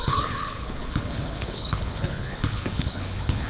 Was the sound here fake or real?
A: fake